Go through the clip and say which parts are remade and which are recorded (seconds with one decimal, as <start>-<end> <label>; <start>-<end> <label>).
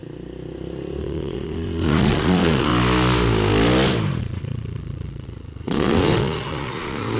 0.0-1.0 recorded; 1.0-2.7 remade; 2.7-4.2 recorded; 4.2-7.2 remade